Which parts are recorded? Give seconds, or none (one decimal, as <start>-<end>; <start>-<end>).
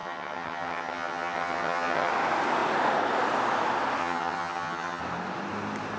2.1-4.0; 5.0-6.0